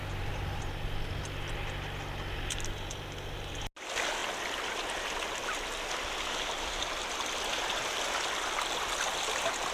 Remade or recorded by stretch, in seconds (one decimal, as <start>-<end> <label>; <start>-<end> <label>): 0.0-0.6 remade; 0.6-9.7 recorded